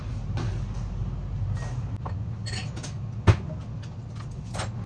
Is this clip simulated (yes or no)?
no